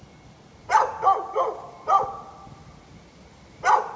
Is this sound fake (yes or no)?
no